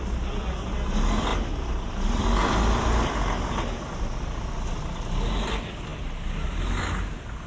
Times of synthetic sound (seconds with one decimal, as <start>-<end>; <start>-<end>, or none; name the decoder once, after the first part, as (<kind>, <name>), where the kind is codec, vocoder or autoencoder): none